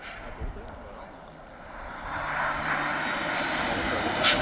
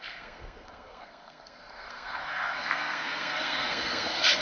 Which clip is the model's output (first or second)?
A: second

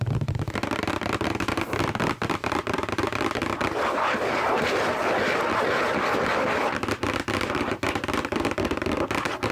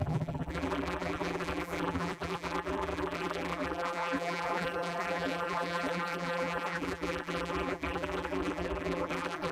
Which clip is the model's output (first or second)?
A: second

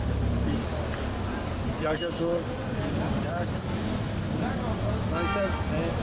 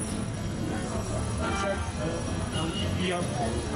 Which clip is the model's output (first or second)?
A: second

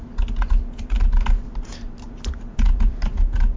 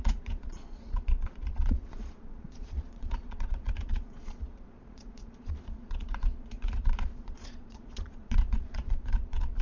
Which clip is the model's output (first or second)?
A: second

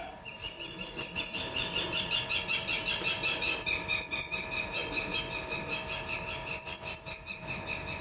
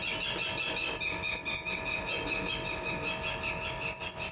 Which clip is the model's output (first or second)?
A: first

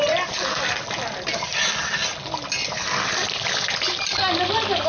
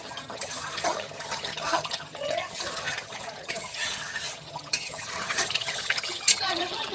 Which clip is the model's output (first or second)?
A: second